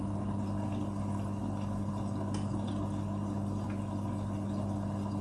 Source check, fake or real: real